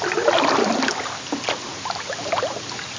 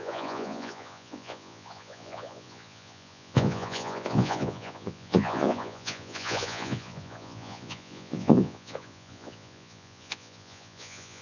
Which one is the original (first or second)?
first